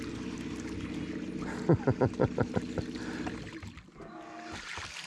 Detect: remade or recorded recorded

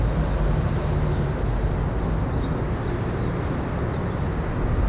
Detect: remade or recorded recorded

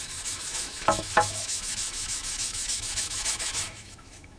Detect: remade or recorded remade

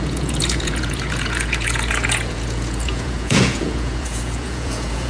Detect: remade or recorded remade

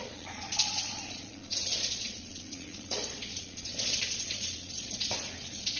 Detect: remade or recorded remade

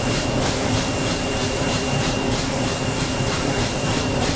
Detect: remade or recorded remade